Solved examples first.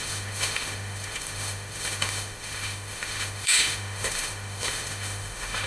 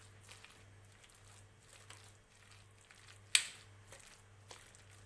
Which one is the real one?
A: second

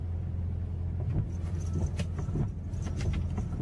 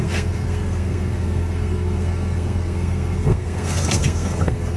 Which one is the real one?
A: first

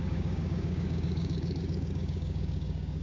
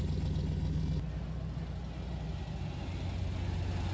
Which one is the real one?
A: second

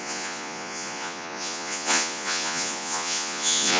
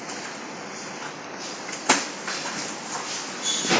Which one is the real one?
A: second